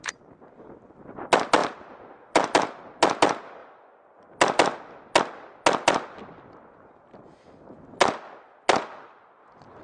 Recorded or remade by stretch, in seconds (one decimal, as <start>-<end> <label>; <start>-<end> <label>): 0.0-1.6 recorded; 1.6-2.8 remade; 2.8-9.8 recorded